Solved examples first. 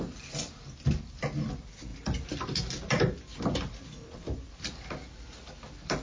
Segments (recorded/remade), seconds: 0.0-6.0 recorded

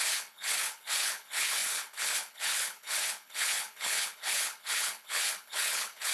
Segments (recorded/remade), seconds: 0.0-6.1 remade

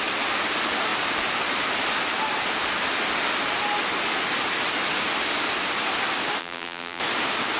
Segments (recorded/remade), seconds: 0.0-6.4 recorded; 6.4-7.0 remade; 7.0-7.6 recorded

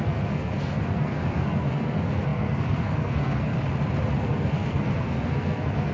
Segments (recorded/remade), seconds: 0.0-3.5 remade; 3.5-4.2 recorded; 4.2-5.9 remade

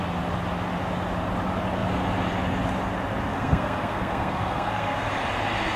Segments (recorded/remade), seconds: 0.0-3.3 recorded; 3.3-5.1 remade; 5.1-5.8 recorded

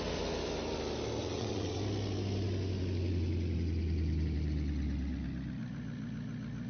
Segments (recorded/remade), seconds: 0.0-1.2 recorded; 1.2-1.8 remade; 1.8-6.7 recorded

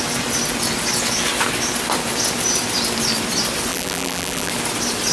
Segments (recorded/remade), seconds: 0.0-3.7 recorded; 3.7-4.5 remade; 4.5-5.1 recorded